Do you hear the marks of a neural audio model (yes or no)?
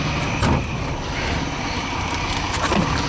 no